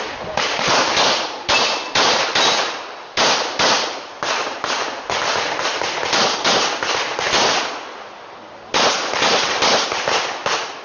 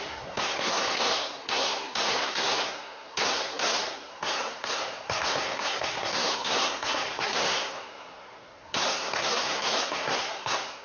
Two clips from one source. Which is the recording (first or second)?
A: first